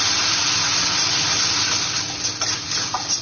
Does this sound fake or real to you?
real